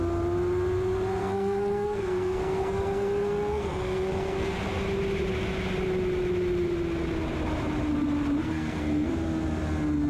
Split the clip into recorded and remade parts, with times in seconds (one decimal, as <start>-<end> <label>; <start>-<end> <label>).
0.0-1.2 recorded; 1.2-4.6 remade; 4.6-8.4 recorded; 8.4-9.1 remade; 9.1-10.1 recorded